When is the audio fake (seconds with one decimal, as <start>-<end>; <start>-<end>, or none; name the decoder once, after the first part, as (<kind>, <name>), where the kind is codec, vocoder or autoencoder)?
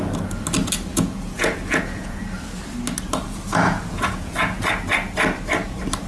0.9-2.2 (vocoder, Vocos); 3.5-4.7